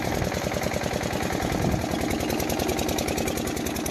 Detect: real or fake real